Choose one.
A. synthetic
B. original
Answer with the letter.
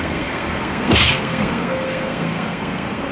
A